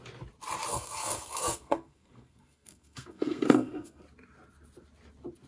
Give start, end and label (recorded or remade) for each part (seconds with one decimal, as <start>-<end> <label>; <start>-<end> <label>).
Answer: 0.0-0.7 recorded; 0.7-4.0 remade; 4.0-5.5 recorded